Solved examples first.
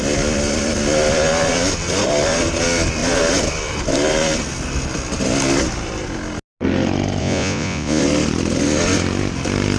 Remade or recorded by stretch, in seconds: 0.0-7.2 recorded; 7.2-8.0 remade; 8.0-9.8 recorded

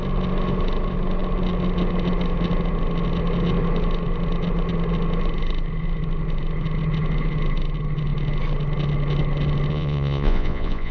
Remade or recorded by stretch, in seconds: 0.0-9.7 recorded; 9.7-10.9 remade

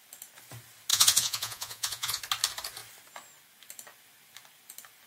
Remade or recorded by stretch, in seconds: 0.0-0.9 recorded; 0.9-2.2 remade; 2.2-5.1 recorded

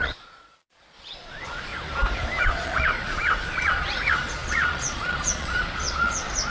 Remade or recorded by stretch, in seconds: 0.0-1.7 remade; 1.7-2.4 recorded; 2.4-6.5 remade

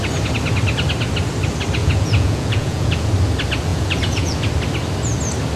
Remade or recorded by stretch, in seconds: 0.0-1.8 recorded; 1.8-3.1 remade; 3.1-3.7 recorded; 3.7-4.5 remade; 4.5-5.6 recorded

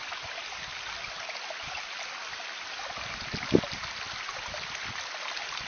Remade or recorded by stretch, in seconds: 0.0-5.7 recorded

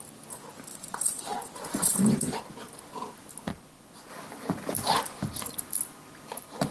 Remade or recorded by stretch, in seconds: 0.0-0.7 recorded; 0.7-2.4 remade; 2.4-3.5 recorded; 3.5-4.1 remade; 4.1-6.7 recorded